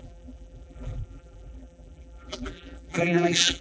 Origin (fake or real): fake